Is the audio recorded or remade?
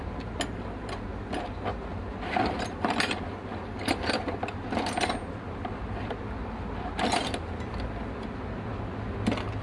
recorded